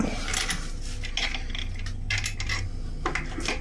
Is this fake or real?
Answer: real